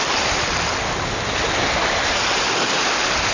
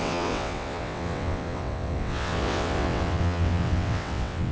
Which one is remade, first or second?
second